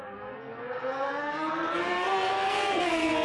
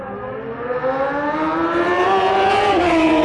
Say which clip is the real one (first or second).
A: second